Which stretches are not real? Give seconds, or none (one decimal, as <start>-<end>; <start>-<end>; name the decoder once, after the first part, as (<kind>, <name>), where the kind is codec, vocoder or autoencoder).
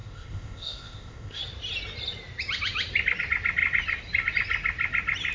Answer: 0.0-1.4 (codec, ZipCodec)